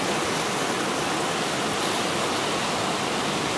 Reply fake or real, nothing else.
real